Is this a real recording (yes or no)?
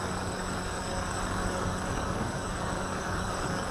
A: no